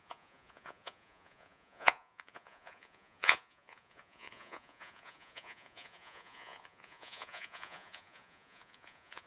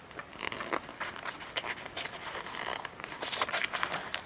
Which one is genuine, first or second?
second